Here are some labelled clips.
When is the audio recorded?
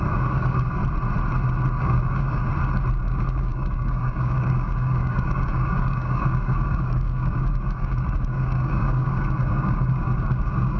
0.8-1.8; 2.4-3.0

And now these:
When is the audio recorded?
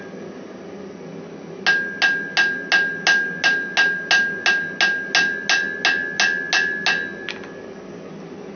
0.0-8.6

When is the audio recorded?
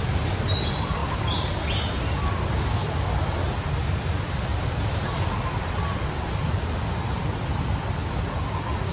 0.0-8.9